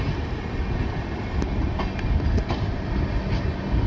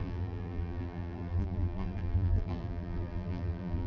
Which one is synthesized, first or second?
second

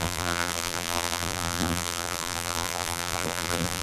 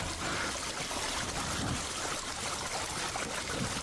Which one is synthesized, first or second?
first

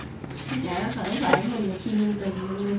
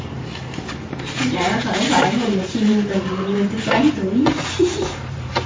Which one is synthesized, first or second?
second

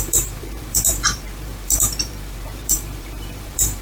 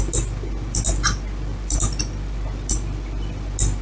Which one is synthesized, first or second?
first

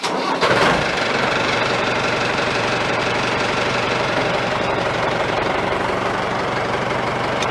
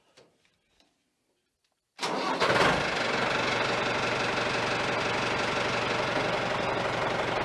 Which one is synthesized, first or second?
first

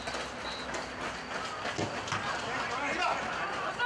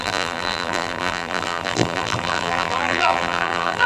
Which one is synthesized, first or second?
second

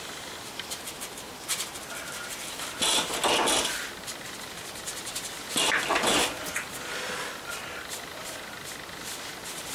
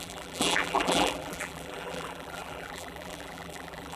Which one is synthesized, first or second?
second